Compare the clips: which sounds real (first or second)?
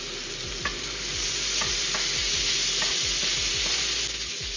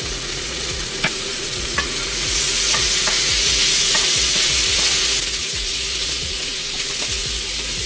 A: first